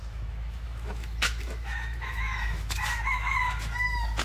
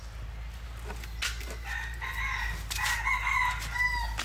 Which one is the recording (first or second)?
second